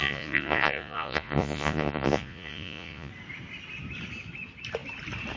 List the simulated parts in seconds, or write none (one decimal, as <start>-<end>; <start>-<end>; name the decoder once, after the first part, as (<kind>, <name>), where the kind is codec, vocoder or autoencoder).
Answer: 0.0-3.1 (vocoder, Vocos)